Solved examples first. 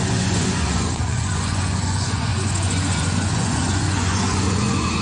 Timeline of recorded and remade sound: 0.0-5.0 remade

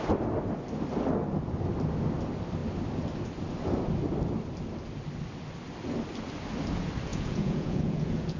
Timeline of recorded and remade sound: 0.0-7.1 recorded; 7.1-8.4 remade

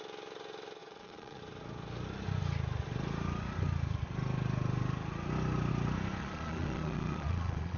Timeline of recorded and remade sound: 0.0-0.8 recorded; 0.8-1.4 remade; 1.4-6.2 recorded; 6.2-7.8 remade